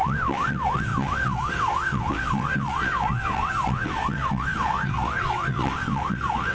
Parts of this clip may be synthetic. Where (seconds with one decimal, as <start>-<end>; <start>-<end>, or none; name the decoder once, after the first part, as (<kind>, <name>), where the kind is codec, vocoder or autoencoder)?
0.0-6.5 (vocoder, WaveNeXt)

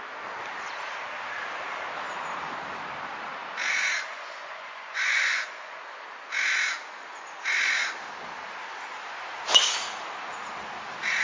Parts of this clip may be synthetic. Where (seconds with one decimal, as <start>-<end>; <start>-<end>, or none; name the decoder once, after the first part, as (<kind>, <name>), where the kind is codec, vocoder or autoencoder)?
4.1-5.8 (vocoder, Vocos)

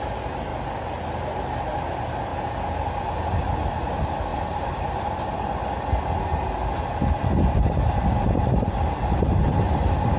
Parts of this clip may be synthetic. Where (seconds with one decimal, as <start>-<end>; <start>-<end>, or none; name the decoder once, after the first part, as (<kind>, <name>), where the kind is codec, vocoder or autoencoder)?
none

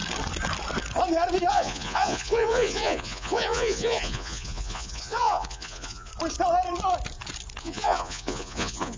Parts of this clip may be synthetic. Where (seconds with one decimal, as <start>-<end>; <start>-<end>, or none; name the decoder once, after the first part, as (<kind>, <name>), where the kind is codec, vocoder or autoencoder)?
1.5-6.1 (vocoder, Vocos); 7.6-9.0